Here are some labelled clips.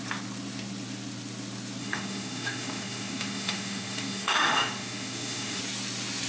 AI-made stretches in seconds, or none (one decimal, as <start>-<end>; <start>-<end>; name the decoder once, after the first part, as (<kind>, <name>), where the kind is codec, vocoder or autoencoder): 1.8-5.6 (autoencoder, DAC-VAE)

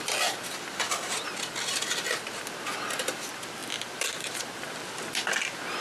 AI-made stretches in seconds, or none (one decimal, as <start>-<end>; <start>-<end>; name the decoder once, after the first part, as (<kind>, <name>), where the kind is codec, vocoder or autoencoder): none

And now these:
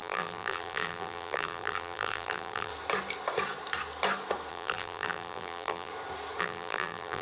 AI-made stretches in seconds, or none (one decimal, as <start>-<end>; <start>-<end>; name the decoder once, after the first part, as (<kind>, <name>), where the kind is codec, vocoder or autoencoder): 0.0-2.7 (vocoder, BigVGAN v2); 4.5-5.9; 6.4-7.2